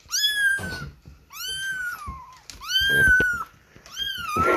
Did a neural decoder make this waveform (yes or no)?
no